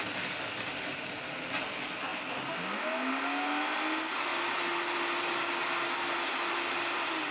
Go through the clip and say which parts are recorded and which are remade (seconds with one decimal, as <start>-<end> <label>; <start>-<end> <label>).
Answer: 0.0-7.3 recorded